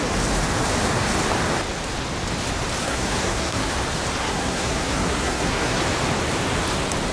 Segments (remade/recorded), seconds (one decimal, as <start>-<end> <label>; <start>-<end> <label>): 0.0-2.8 recorded; 2.8-3.7 remade; 3.7-4.2 recorded; 4.2-5.8 remade; 5.8-7.1 recorded